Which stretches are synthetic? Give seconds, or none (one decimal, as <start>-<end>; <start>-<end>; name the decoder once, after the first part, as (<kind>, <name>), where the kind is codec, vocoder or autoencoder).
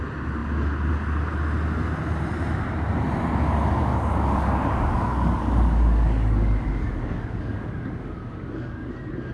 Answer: 3.8-8.9 (codec, DAC)